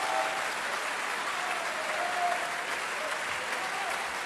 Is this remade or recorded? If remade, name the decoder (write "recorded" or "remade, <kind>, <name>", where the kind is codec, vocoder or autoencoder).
recorded